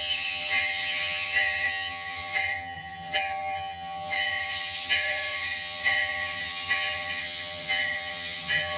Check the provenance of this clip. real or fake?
fake